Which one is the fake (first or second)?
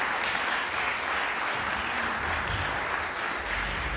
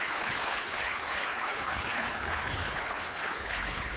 second